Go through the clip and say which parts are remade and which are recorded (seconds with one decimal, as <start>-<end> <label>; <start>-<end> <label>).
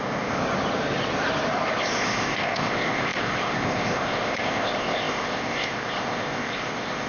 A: 0.0-0.4 remade; 0.4-1.8 recorded; 1.8-7.1 remade